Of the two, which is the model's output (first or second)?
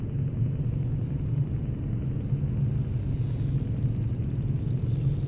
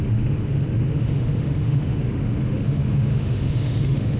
second